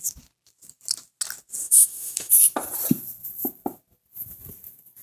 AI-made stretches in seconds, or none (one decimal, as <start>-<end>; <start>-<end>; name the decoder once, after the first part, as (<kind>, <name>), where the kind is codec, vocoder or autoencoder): 1.6-2.3 (autoencoder, DAC-VAE)